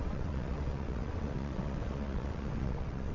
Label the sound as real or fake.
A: fake